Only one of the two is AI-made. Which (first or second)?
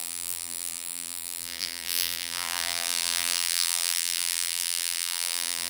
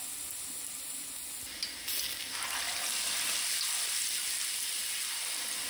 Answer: first